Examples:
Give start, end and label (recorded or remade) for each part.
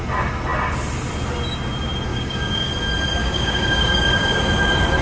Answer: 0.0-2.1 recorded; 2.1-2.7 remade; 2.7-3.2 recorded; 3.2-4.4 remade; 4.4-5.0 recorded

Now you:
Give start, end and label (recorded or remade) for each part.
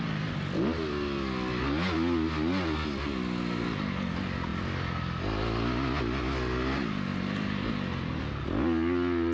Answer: 0.0-9.3 recorded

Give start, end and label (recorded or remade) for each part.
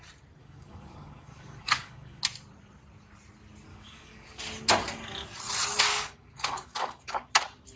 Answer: 0.0-0.4 recorded; 0.4-2.2 remade; 2.2-3.7 recorded; 3.7-4.4 remade; 4.4-5.9 recorded; 5.9-7.3 remade; 7.3-7.8 recorded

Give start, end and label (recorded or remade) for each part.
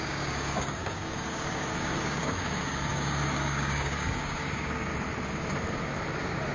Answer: 0.0-4.9 remade; 4.9-6.1 recorded; 6.1-6.5 remade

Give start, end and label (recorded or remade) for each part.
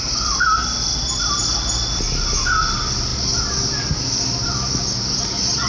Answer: 0.0-5.7 recorded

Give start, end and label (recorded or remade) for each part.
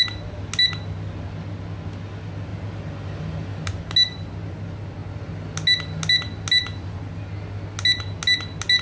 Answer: 0.0-8.8 recorded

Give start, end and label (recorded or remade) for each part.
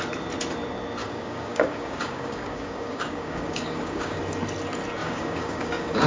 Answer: 0.0-1.0 recorded; 1.0-4.2 remade; 4.2-5.0 recorded; 5.0-6.1 remade